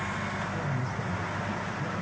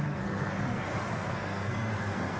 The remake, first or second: second